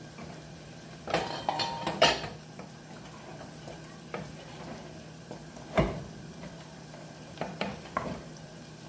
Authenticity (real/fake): fake